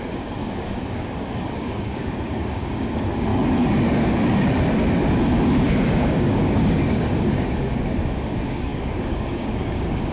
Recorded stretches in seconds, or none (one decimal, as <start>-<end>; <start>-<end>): 3.3-5.5